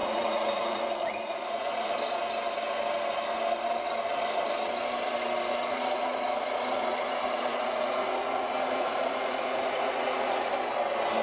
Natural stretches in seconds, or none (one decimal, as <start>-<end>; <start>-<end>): 1.9-5.7; 10.5-11.2